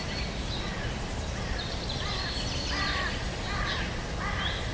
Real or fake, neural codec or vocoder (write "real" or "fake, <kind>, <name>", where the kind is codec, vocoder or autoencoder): real